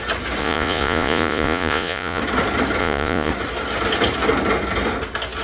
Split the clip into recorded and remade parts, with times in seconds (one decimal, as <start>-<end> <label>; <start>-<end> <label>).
0.0-0.4 recorded; 0.4-2.2 remade; 2.2-2.8 recorded; 2.8-3.3 remade; 3.3-5.4 recorded